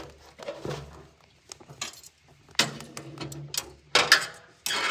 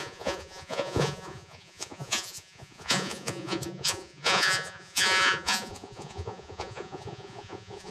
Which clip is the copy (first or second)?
second